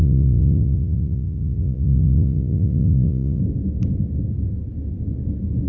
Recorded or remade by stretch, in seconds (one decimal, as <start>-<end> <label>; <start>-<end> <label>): 0.0-3.4 remade; 3.4-5.7 recorded